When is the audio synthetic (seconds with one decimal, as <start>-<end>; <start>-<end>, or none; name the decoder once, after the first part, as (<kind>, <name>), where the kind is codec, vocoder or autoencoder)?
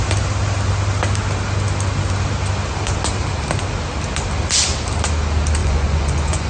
5.6-6.5 (vocoder, Vocos)